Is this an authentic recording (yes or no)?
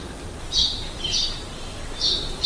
yes